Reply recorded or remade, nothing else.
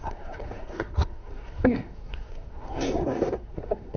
remade